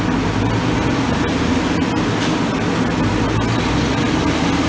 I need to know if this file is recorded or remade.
recorded